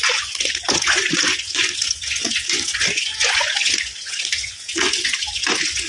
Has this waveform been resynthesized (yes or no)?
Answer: yes